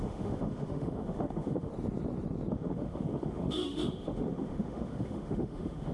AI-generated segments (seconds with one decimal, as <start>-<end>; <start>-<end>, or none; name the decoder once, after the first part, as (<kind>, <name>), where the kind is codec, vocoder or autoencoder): 0.0-1.7 (autoencoder, DAC-VAE); 2.5-5.9

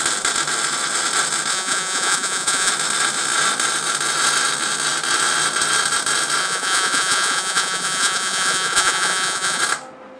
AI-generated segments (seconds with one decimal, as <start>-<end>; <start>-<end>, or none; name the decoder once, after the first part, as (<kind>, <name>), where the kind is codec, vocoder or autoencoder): 1.5-2.7 (vocoder, Vocos); 6.4-9.6

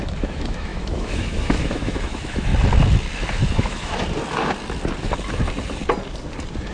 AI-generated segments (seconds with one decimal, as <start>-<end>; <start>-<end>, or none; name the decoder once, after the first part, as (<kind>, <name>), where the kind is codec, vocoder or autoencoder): 0.0-2.5 (autoencoder, DAC-VAE); 3.5-3.9

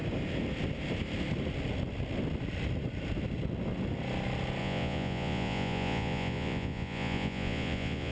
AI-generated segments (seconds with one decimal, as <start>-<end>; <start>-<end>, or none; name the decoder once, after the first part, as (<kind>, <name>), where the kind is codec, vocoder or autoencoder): 4.6-8.1 (vocoder, Vocos)

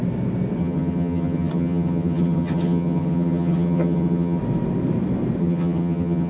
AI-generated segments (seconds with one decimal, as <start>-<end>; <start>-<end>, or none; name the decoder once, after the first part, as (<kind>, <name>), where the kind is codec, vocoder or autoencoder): 0.6-4.4 (vocoder, HiFi-GAN); 5.4-6.3

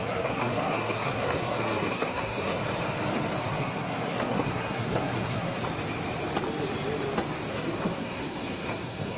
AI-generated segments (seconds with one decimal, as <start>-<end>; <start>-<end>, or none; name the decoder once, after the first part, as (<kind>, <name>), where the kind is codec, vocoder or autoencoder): 0.0-2.6 (codec, SNAC); 3.4-5.6; 7.5-9.2

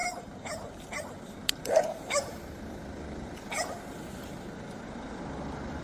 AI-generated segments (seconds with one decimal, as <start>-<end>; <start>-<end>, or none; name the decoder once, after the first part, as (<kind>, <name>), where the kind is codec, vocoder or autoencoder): 0.0-2.6 (vocoder, BigVGAN v2)

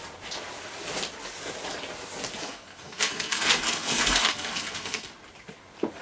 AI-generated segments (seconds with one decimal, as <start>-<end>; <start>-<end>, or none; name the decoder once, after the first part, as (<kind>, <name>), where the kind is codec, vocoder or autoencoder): 2.4-5.1 (codec, SNAC)